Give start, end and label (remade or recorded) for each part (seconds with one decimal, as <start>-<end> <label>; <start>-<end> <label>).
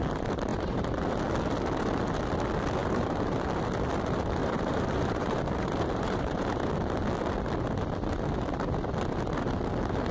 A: 0.0-0.5 recorded; 0.5-1.0 remade; 1.0-2.8 recorded; 2.8-3.4 remade; 3.4-4.4 recorded; 4.4-6.7 remade; 6.7-10.1 recorded